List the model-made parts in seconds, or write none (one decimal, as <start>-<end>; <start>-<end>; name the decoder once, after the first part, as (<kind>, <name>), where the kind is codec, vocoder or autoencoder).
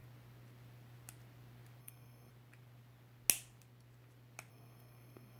1.8-2.3 (codec, SNAC); 4.5-5.4